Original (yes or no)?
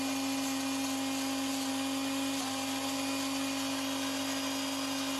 yes